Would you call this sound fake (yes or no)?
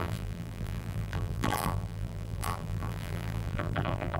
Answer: yes